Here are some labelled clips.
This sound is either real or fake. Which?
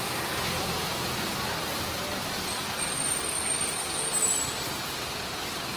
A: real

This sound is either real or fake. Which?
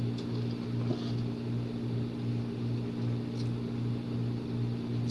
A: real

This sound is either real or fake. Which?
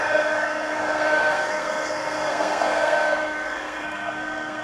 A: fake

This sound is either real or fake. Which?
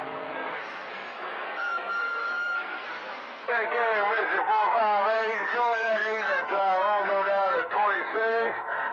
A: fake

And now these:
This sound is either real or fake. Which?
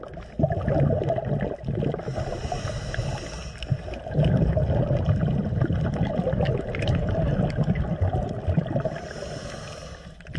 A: real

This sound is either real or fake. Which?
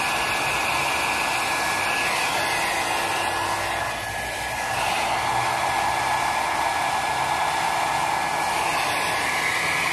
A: real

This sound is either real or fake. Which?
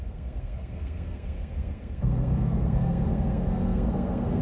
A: fake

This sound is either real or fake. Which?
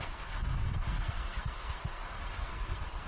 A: fake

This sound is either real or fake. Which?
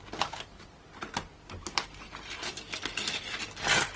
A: real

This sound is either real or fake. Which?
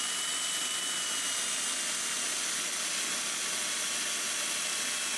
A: real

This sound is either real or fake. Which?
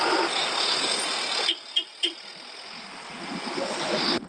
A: real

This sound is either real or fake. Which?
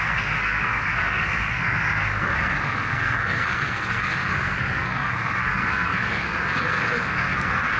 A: fake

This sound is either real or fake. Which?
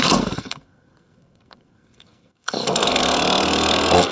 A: fake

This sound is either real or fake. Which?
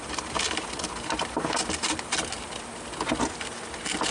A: real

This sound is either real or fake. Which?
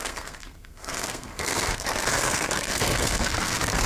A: fake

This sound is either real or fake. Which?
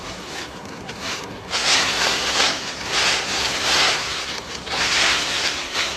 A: fake